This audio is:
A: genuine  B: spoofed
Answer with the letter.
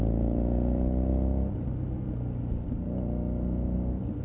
A